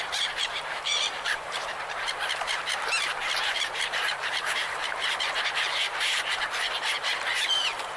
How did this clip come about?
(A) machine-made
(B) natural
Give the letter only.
A